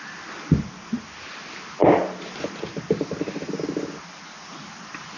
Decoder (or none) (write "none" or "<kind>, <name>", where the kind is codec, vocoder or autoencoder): none